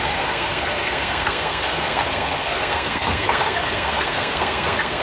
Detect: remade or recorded remade